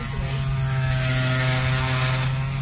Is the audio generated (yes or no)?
no